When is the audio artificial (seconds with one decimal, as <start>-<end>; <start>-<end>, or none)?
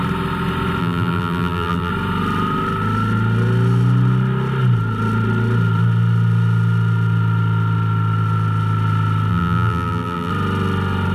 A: 0.8-1.9; 9.3-10.3